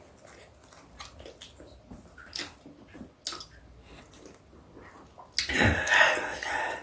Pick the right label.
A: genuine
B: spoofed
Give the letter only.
A